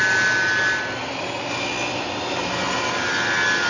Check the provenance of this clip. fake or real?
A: real